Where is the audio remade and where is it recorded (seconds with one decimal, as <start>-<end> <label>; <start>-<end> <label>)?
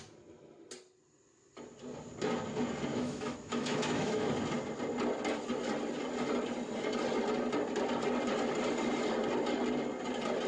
0.0-2.9 recorded; 2.9-4.3 remade; 4.3-10.5 recorded